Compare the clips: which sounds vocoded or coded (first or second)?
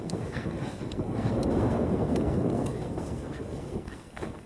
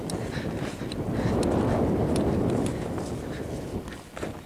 first